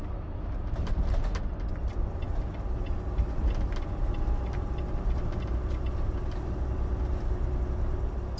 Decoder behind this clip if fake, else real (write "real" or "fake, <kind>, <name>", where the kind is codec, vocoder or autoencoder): real